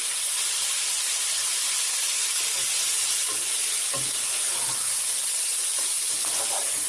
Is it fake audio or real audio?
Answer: real